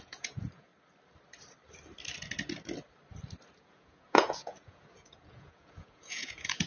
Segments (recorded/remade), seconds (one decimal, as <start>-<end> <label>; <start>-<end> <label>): 0.0-0.7 remade; 0.7-3.6 recorded; 3.6-6.7 remade

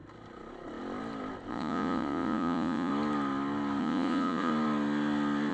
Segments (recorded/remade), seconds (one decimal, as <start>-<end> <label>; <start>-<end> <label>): 0.0-1.5 recorded; 1.5-2.9 remade; 2.9-3.8 recorded; 3.8-4.5 remade; 4.5-5.5 recorded

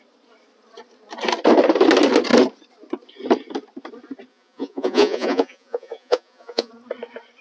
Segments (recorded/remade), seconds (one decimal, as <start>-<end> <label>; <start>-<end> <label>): 0.0-4.3 recorded; 4.3-6.7 remade; 6.7-7.4 recorded

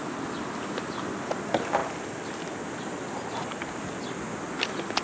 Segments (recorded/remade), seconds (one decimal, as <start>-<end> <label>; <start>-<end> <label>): 0.0-5.0 recorded

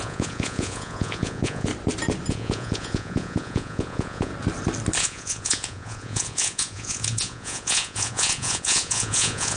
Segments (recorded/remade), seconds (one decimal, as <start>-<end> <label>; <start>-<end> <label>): 0.0-1.7 remade; 1.7-2.3 recorded; 2.3-4.3 remade; 4.3-5.0 recorded; 5.0-9.6 remade

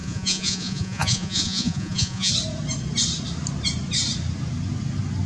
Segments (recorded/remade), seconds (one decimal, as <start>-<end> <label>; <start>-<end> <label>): 0.0-2.3 remade; 2.3-5.3 recorded